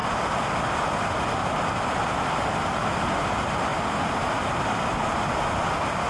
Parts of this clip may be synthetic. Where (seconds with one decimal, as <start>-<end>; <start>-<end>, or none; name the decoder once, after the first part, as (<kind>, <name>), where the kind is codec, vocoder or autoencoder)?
none